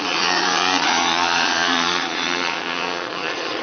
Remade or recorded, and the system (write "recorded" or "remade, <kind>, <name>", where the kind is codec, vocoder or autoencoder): remade, vocoder, Vocos